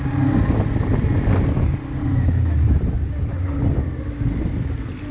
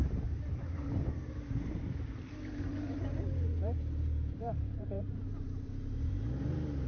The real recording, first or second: first